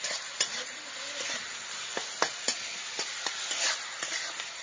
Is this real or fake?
real